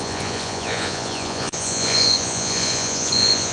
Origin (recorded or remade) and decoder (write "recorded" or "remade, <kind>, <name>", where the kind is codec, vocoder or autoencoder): remade, vocoder, Vocos